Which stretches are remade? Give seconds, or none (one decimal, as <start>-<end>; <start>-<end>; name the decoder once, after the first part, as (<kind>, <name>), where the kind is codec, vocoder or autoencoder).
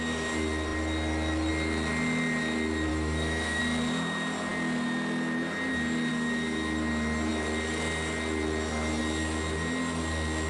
2.9-3.6 (autoencoder, DAC-VAE)